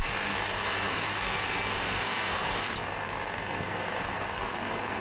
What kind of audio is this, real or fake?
fake